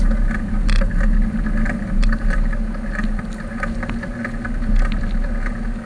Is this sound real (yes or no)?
yes